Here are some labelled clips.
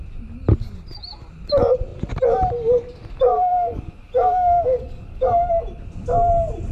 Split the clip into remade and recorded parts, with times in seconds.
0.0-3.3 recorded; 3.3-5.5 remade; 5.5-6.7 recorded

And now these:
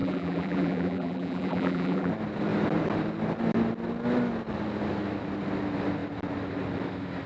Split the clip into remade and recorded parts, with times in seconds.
0.0-2.1 remade; 2.1-7.3 recorded